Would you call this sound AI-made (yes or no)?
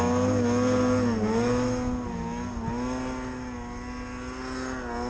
no